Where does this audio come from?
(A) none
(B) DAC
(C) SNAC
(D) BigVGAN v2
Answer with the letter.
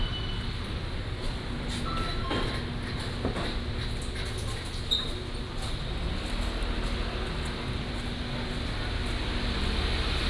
A